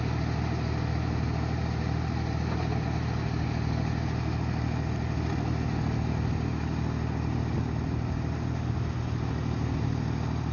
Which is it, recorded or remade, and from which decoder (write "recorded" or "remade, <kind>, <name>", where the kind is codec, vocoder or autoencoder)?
recorded